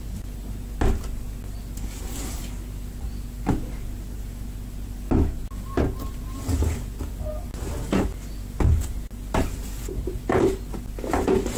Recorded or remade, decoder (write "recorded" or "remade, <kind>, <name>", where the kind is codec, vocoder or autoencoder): recorded